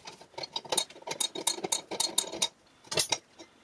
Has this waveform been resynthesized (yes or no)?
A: no